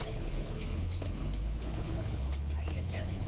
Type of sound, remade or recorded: remade